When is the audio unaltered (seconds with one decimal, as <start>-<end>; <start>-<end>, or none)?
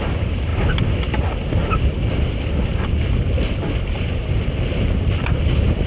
0.5-4.0